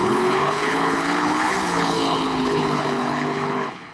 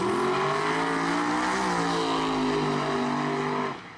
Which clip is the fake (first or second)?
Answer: first